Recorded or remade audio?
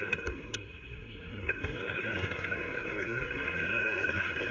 remade